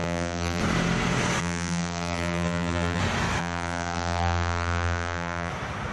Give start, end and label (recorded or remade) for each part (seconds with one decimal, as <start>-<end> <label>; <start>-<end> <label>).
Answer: 0.0-0.6 remade; 0.6-1.4 recorded; 1.4-3.0 remade; 3.0-3.4 recorded; 3.4-5.5 remade; 5.5-5.9 recorded